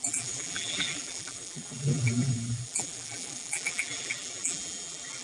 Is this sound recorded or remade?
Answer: remade